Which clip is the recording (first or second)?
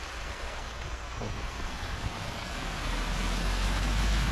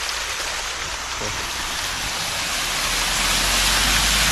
second